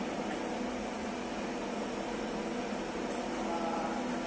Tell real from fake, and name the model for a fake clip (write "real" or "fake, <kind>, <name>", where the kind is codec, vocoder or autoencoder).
real